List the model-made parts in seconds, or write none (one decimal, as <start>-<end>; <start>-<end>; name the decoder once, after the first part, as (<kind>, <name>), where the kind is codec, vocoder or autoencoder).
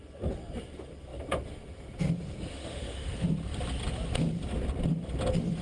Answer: 2.5-3.1 (autoencoder, DAC-VAE)